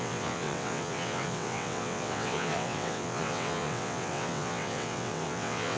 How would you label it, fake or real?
fake